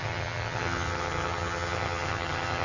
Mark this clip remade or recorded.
remade